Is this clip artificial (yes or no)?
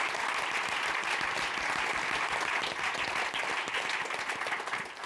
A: no